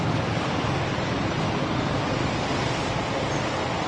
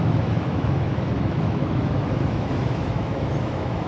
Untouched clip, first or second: first